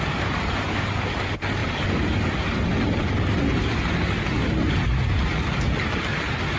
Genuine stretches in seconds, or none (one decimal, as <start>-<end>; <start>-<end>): 0.0-6.6